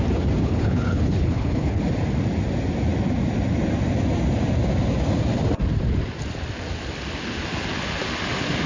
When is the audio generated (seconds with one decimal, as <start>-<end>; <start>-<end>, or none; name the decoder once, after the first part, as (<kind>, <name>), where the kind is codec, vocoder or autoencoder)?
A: 0.4-1.8 (codec, HILCodec)

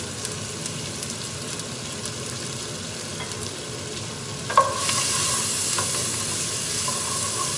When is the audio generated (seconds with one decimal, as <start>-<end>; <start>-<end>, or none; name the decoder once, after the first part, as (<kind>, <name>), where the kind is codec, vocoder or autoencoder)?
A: none

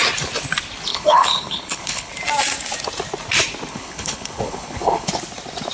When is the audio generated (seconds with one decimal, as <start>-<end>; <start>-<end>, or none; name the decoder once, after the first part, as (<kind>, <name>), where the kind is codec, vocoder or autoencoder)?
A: 0.9-2.1 (codec, HILCodec); 3.7-5.1

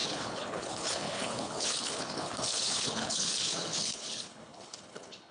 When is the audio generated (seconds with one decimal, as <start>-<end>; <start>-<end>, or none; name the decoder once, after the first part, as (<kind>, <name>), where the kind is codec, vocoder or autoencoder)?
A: 0.0-5.3 (codec, HILCodec)

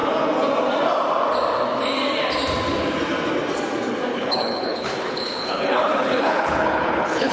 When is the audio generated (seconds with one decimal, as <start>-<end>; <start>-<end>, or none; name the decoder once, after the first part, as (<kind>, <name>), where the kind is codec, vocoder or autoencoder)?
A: 4.1-7.3 (codec, HILCodec)

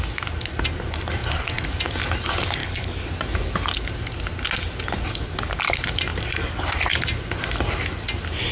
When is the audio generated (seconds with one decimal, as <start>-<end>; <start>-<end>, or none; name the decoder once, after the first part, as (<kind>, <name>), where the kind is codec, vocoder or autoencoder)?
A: 2.6-3.1 (codec, HILCodec)

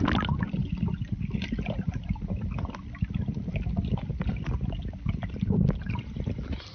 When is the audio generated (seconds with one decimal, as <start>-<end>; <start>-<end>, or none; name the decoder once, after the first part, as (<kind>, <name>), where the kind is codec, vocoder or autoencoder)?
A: none